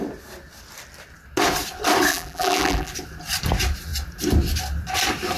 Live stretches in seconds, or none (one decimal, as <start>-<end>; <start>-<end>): 0.0-2.1; 2.9-5.4